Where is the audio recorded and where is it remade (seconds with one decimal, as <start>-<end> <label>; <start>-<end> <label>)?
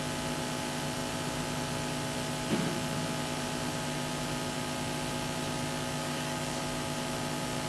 0.0-6.0 recorded; 6.0-6.6 remade; 6.6-7.7 recorded